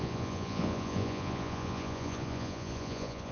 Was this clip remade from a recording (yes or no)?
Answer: yes